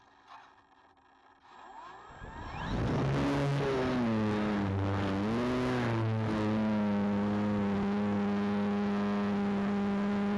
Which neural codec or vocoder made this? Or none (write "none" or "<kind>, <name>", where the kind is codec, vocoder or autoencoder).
none